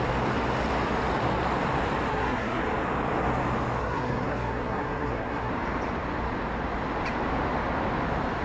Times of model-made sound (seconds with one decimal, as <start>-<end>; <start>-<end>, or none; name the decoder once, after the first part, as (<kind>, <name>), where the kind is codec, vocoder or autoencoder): 2.1-2.6 (codec, SNAC); 3.8-5.5